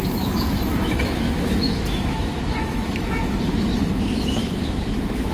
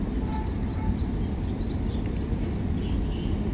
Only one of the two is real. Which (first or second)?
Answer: second